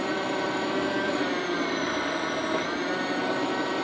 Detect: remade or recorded remade